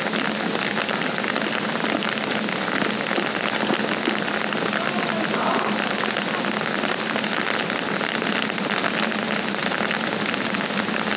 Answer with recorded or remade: recorded